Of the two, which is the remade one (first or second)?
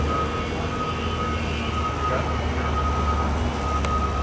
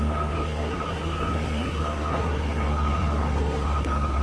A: second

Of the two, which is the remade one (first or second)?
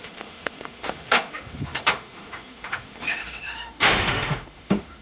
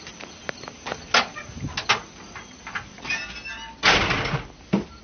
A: first